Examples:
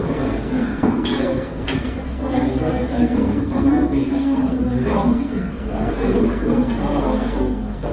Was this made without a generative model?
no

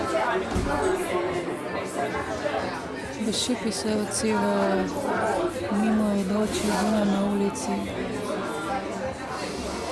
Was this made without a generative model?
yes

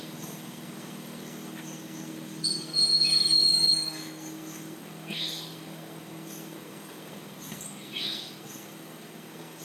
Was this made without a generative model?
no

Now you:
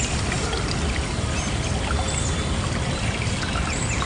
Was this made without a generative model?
yes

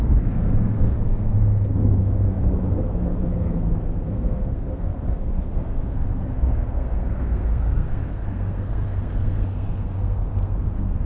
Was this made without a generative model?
no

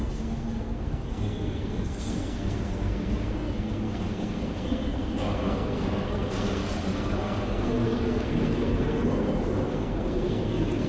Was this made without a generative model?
no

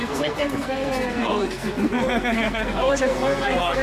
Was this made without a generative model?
no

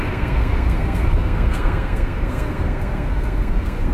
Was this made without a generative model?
no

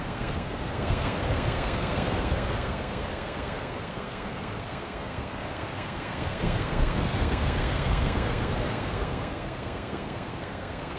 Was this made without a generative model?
no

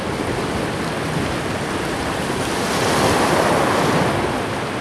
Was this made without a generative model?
yes